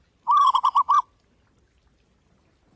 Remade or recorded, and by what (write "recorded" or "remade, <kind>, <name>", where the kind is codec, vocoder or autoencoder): recorded